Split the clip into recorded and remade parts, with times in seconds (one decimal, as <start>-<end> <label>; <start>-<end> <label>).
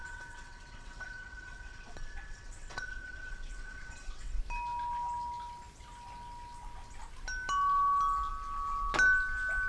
0.0-4.4 remade; 4.4-9.7 recorded